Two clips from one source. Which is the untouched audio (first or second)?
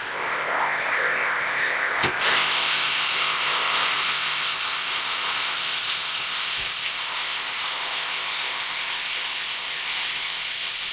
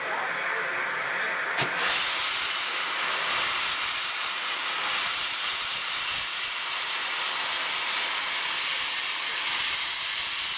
second